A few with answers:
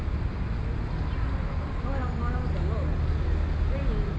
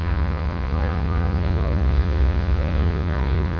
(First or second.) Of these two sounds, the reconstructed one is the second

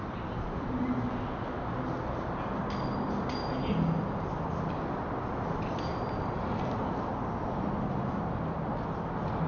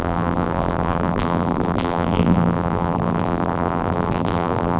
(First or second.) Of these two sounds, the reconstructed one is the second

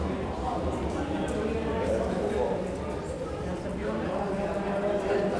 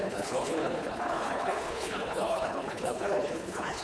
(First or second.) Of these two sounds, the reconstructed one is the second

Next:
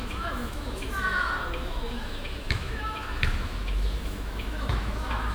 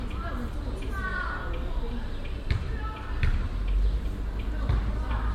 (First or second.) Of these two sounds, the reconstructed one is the first